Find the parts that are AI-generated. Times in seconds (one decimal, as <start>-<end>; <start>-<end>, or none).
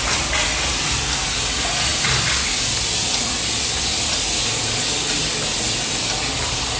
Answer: none